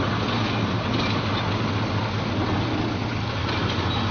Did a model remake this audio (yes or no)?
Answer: no